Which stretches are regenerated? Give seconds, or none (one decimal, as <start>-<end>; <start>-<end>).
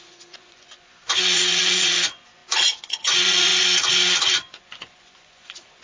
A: 0.0-5.8